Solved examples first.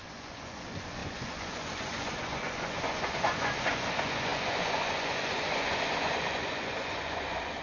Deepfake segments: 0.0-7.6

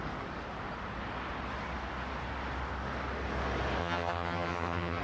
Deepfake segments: 3.8-5.0

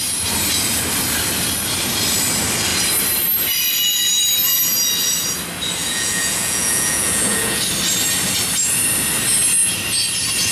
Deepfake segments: 5.8-7.6

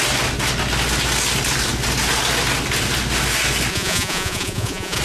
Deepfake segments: 3.7-5.0